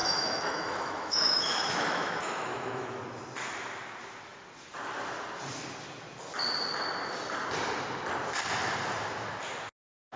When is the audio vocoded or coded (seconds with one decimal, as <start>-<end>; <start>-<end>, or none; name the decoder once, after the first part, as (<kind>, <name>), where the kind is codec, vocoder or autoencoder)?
0.0-3.0 (autoencoder, DAC-VAE)